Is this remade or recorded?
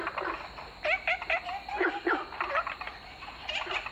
recorded